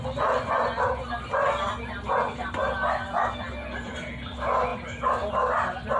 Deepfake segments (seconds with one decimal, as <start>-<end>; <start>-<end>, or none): none